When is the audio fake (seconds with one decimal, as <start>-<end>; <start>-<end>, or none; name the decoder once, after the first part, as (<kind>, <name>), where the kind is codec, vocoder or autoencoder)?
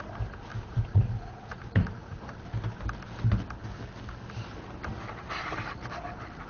0.5-2.3 (vocoder, Vocos)